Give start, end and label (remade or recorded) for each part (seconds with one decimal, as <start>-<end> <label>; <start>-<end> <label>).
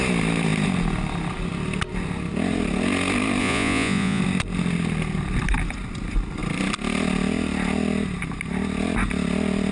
0.0-3.4 recorded; 3.4-4.2 remade; 4.2-9.7 recorded